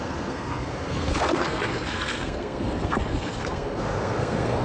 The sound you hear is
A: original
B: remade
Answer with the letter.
B